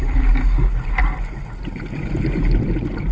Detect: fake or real real